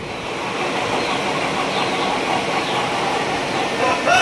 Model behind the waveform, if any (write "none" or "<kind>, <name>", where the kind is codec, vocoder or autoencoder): none